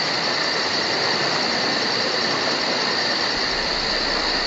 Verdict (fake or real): real